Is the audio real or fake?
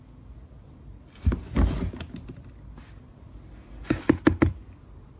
real